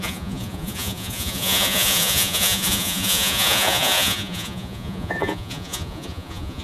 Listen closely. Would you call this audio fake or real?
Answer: fake